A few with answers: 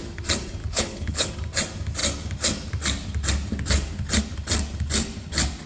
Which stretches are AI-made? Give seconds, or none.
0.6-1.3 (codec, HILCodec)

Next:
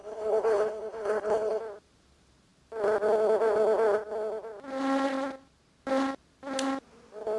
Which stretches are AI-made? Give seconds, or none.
0.0-1.6 (codec, HILCodec)

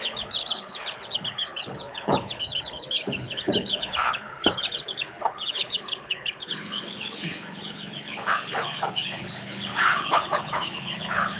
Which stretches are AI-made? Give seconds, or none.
0.0-11.4 (codec, HILCodec)

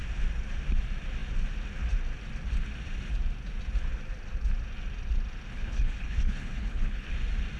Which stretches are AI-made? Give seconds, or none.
5.5-7.1 (codec, HILCodec)

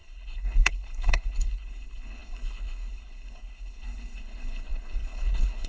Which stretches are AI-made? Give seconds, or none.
0.0-5.7 (codec, HILCodec)

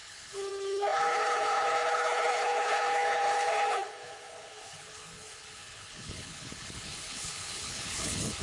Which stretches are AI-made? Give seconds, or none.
0.0-8.4 (codec, HILCodec)

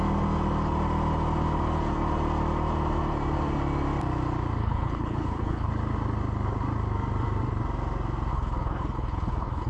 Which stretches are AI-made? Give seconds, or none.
4.6-5.7 (codec, HILCodec); 8.3-9.7